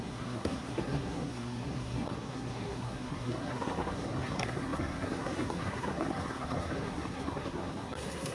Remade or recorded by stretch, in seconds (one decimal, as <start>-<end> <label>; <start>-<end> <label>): 0.0-8.3 remade